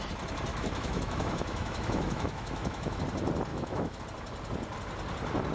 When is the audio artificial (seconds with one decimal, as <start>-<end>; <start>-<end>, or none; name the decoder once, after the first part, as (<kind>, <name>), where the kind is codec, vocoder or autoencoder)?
0.5-3.0 (autoencoder, DAC-VAE); 3.5-4.0